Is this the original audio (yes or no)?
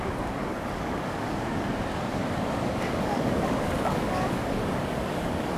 no